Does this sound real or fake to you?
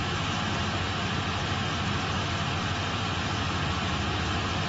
real